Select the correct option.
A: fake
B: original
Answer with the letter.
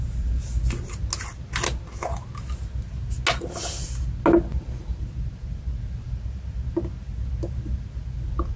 B